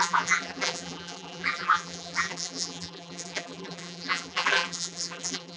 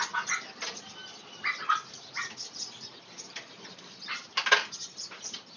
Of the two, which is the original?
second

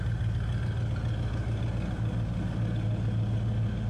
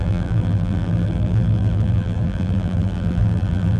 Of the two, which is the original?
first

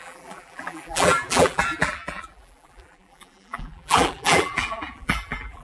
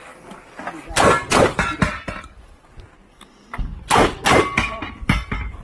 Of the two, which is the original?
second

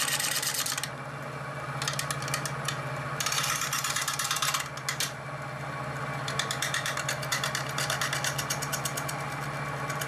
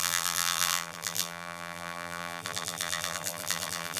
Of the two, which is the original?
first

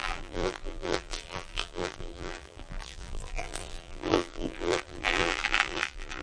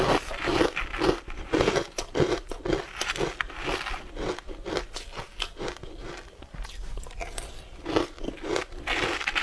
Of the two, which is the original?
second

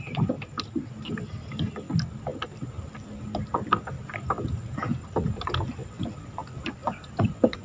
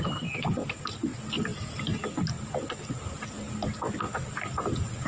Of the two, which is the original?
second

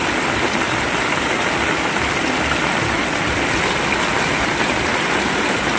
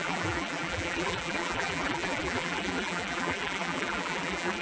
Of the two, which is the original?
first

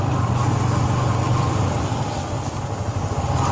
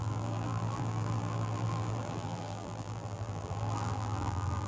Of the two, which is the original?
first